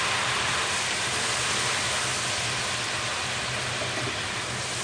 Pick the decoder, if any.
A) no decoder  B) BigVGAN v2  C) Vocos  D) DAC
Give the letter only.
A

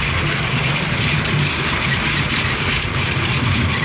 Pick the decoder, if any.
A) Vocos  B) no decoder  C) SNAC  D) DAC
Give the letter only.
B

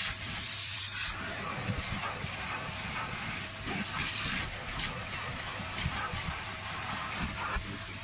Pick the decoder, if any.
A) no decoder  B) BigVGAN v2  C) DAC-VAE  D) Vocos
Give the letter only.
B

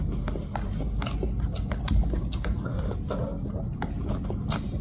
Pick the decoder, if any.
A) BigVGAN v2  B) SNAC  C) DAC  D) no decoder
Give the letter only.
D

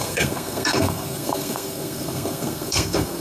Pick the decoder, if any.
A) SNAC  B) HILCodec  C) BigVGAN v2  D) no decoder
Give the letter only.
A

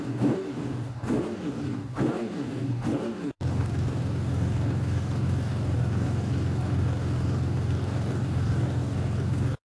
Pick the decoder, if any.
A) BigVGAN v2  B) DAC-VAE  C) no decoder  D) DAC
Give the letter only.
D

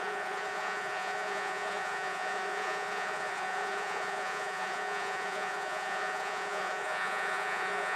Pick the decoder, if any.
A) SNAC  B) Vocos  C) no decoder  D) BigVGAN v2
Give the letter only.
B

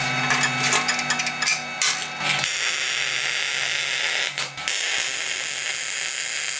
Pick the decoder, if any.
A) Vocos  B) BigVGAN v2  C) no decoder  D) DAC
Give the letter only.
C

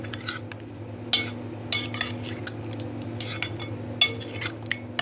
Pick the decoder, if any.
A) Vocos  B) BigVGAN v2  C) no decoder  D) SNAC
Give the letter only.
C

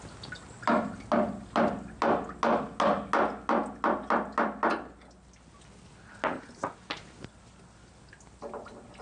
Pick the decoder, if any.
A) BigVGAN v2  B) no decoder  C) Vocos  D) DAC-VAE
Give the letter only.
B